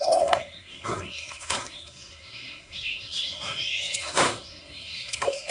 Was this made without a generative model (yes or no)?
no